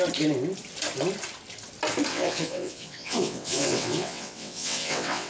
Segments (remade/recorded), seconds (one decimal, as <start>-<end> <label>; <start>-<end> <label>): 0.0-2.1 recorded; 2.1-5.3 remade